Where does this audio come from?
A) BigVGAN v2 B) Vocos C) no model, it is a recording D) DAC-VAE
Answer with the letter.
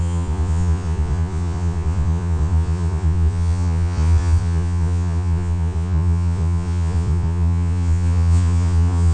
B